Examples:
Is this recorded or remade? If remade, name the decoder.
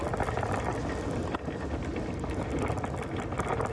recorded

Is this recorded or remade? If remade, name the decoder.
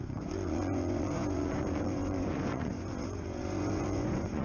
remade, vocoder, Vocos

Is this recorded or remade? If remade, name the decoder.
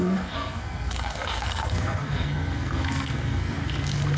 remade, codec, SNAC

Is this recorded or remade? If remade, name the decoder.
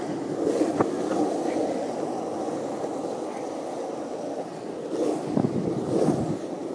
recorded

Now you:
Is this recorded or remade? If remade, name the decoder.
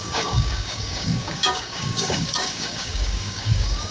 remade, codec, DAC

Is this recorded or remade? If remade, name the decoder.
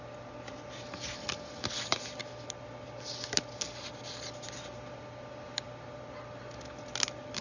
recorded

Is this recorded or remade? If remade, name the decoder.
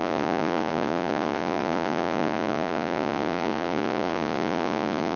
remade, vocoder, Vocos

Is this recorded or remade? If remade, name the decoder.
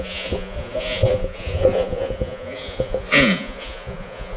remade, vocoder, Vocos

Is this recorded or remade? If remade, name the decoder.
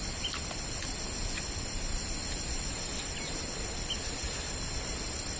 recorded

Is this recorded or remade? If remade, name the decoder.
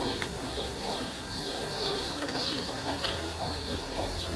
remade, codec, SNAC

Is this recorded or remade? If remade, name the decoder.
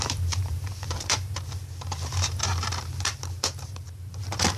remade, vocoder, BigVGAN v2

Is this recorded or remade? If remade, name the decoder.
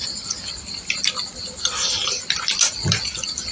recorded